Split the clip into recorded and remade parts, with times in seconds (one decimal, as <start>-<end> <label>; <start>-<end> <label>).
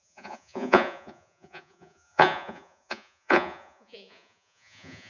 0.0-5.1 remade